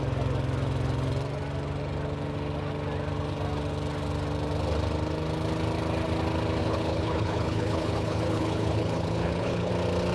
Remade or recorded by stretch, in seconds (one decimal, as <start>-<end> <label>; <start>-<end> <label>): 0.0-6.6 recorded; 6.6-9.7 remade; 9.7-10.1 recorded